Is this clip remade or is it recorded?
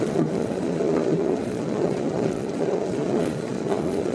remade